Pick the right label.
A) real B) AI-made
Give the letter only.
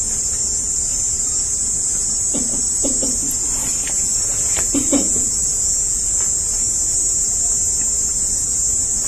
A